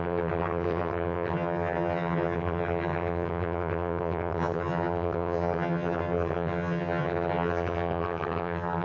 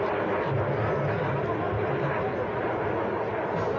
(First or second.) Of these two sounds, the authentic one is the second